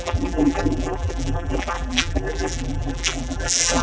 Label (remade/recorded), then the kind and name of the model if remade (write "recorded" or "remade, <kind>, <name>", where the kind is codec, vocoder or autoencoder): remade, vocoder, BigVGAN v2